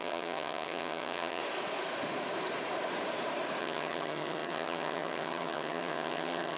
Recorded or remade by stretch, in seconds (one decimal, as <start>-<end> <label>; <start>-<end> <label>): 0.0-1.4 remade; 1.4-3.6 recorded; 3.6-6.6 remade